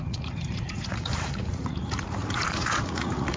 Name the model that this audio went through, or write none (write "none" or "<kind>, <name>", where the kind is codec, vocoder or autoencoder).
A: vocoder, Vocos